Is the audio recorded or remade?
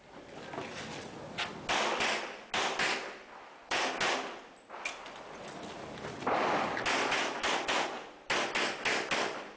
recorded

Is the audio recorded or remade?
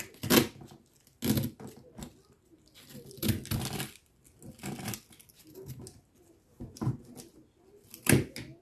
recorded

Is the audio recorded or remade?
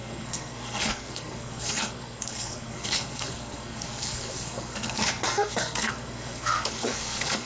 remade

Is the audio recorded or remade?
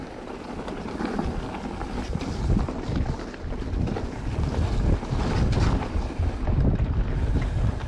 recorded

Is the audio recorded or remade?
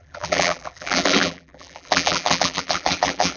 remade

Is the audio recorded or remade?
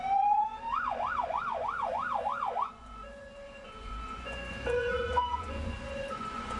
remade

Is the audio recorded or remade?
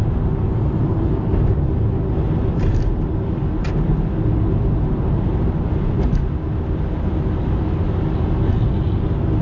recorded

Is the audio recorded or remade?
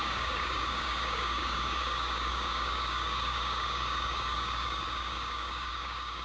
remade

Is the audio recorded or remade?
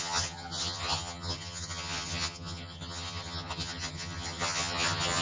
remade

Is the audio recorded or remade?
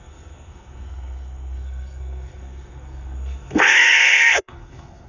remade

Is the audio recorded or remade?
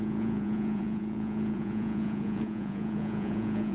remade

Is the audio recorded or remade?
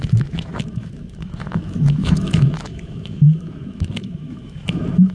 remade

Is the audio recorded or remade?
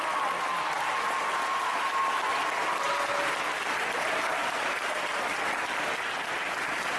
recorded